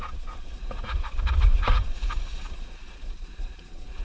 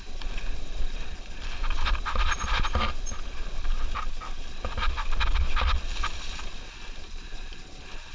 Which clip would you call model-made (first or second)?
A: first